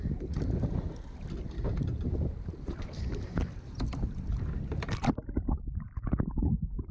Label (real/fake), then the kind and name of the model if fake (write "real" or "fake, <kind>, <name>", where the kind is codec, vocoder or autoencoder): real